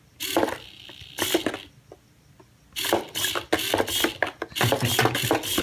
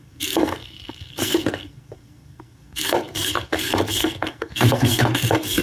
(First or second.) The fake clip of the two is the second